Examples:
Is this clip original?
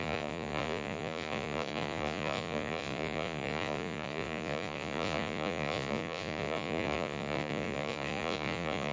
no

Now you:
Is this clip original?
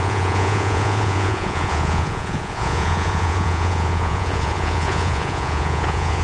no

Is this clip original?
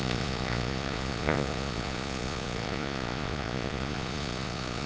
no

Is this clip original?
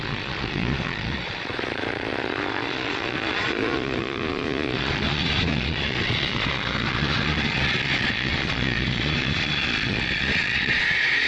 no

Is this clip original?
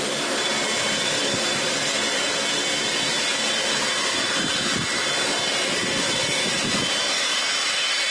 yes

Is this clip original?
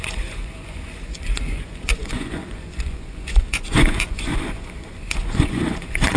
no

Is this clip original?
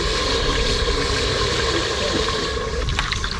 yes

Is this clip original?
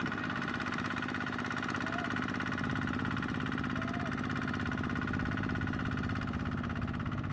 yes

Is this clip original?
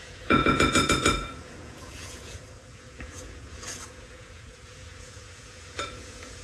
no